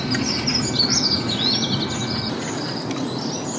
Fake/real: real